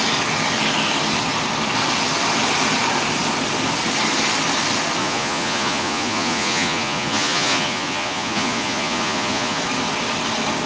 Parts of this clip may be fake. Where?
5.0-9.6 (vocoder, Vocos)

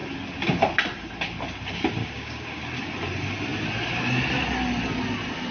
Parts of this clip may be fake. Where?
2.0-2.6 (codec, DAC)

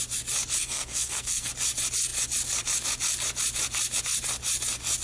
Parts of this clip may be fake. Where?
0.6-1.5 (codec, SNAC)

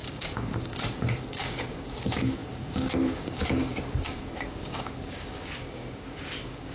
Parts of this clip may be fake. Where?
0.0-6.7 (codec, DAC)